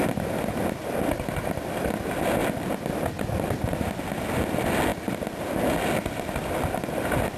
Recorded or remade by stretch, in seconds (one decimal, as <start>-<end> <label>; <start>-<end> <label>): 0.0-7.4 recorded